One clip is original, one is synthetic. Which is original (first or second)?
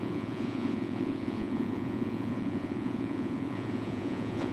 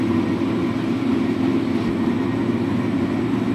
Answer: second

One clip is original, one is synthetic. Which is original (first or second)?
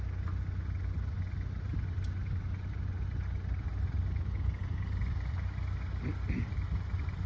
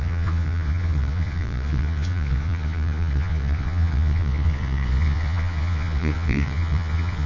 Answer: first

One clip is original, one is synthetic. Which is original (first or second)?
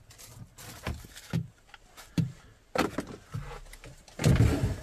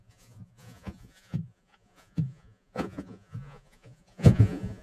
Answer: first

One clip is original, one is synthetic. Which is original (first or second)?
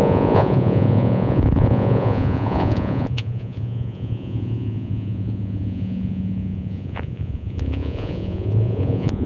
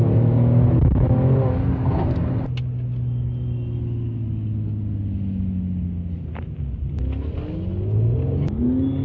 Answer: second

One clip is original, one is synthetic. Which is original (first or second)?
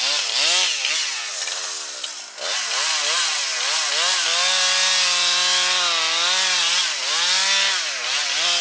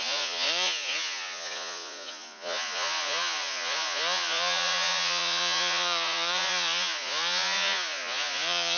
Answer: first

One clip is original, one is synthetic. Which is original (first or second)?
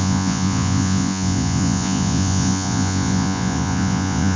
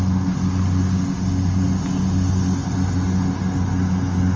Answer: second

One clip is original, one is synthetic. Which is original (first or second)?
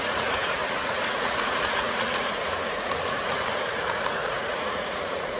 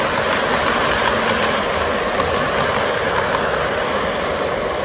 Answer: second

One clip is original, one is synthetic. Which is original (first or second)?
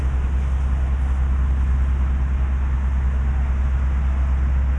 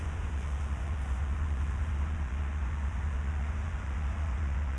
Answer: first